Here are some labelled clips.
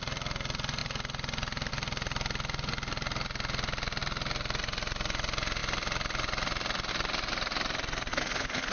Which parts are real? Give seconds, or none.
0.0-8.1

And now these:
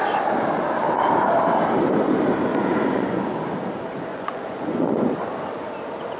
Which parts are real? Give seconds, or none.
0.0-2.5; 3.3-4.1; 5.5-6.2

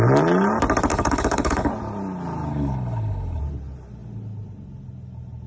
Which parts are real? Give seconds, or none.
0.0-0.9; 1.7-2.5; 3.4-5.5

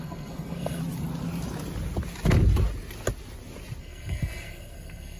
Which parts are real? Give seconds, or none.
0.8-3.8

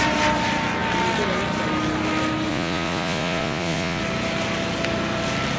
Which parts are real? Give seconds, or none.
0.0-2.5; 4.0-5.6